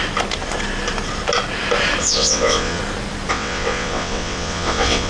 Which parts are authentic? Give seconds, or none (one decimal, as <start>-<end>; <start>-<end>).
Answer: 0.0-2.0; 2.8-3.3